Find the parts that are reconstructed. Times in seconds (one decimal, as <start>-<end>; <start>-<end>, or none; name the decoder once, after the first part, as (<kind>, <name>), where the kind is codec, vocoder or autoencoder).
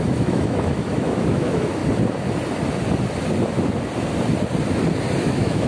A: 0.0-1.8 (autoencoder, DAC-VAE); 5.2-5.7